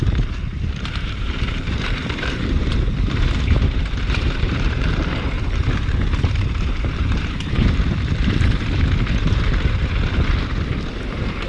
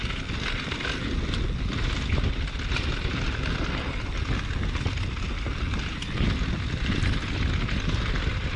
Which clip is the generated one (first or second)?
first